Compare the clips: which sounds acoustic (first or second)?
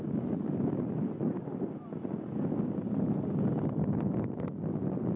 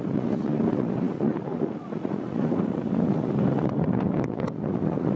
first